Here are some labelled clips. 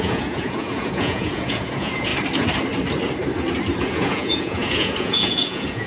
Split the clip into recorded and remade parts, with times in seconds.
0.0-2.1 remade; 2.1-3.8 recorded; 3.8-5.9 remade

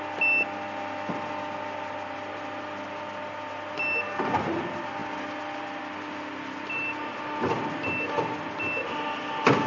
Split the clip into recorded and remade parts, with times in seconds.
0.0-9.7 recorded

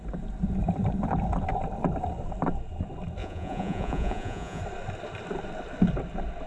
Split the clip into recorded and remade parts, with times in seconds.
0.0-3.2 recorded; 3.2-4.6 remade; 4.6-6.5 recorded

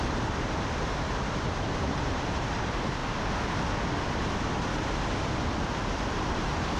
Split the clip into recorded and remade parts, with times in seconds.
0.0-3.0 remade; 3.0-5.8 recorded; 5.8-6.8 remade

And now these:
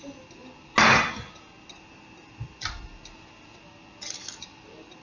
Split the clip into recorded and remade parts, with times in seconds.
0.0-5.0 recorded

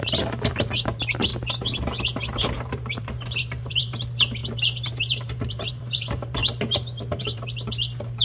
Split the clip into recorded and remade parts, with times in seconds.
0.0-1.3 remade; 1.3-2.2 recorded; 2.2-6.4 remade; 6.4-7.0 recorded; 7.0-8.2 remade

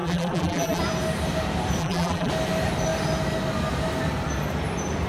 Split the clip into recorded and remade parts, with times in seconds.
0.0-0.8 remade; 0.8-1.8 recorded; 1.8-2.3 remade; 2.3-5.1 recorded

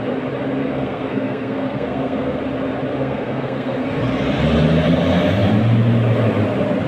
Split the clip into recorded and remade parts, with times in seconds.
0.0-0.6 recorded; 0.6-2.4 remade; 2.4-2.9 recorded; 2.9-4.0 remade; 4.0-6.9 recorded